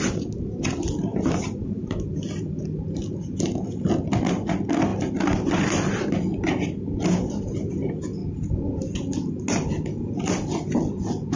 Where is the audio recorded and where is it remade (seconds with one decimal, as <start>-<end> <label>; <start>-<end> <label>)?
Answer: 0.0-1.1 recorded; 1.1-2.8 remade; 2.8-4.9 recorded; 4.9-6.5 remade; 6.5-11.4 recorded